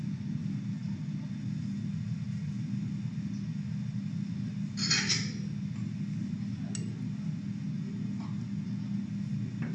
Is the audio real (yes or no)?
yes